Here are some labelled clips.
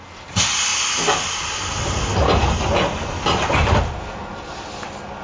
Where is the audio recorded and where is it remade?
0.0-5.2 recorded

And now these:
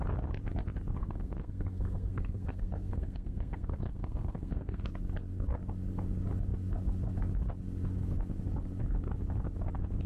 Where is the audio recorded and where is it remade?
0.0-1.0 recorded; 1.0-4.8 remade; 4.8-10.1 recorded

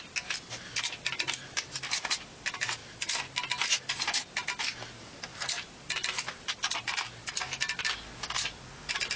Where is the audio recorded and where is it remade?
0.0-9.2 recorded

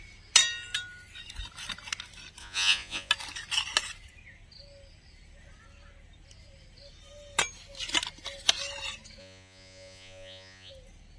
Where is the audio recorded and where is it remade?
0.0-2.4 recorded; 2.4-3.1 remade; 3.1-9.2 recorded; 9.2-10.7 remade; 10.7-11.2 recorded

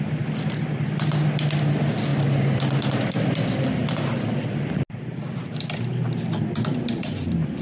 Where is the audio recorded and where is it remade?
0.0-7.6 recorded

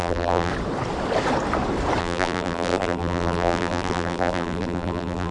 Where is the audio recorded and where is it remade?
0.0-0.5 remade; 0.5-2.0 recorded; 2.0-5.3 remade